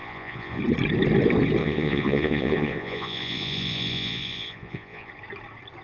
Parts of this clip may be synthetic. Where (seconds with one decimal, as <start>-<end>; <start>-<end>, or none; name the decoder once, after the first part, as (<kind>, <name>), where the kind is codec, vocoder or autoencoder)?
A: 0.0-0.6 (vocoder, Vocos); 1.6-5.1